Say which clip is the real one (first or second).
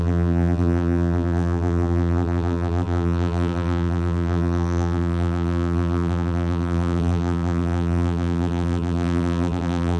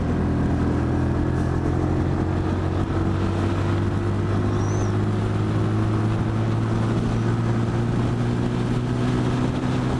second